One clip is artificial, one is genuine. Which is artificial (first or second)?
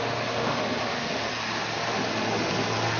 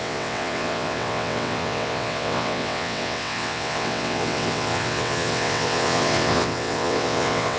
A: second